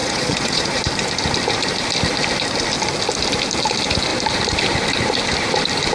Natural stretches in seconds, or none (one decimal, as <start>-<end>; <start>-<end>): 0.8-5.9